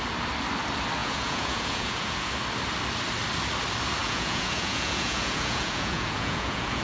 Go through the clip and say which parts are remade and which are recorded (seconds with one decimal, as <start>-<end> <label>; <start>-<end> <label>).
0.0-1.0 recorded; 1.0-2.3 remade; 2.3-4.0 recorded; 4.0-6.8 remade